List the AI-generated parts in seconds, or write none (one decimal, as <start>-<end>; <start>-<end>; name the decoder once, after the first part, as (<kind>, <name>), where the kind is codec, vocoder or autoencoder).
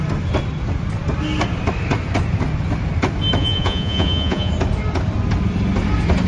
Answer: 3.4-4.5 (vocoder, Vocos)